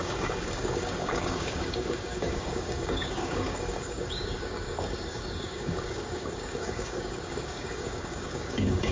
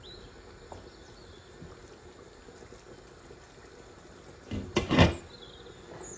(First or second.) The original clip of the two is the second